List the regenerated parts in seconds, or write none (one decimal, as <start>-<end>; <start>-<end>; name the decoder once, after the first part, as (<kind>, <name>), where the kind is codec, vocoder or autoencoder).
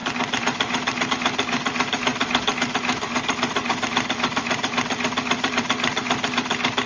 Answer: none